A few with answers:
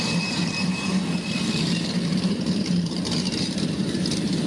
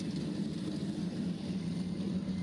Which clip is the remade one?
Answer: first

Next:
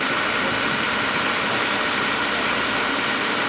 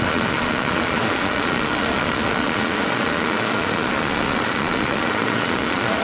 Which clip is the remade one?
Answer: second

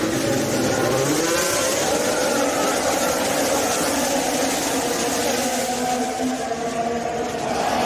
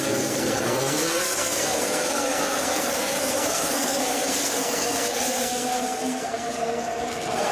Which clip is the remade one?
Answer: second